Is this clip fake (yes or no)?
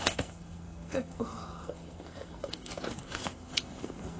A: yes